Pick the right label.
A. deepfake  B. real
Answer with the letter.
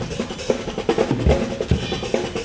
B